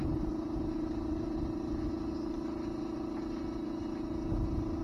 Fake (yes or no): no